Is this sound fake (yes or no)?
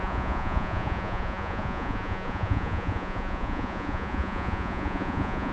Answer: yes